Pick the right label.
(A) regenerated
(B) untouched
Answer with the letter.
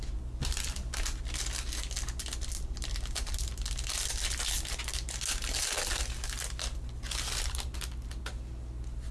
B